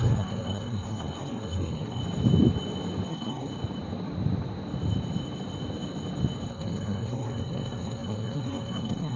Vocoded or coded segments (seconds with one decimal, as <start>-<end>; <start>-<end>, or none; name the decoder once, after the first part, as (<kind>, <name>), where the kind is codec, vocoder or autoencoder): 0.0-2.0 (codec, SNAC); 3.1-3.5; 6.5-9.2